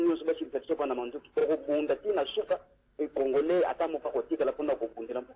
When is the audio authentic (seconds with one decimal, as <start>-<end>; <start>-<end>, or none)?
0.0-5.4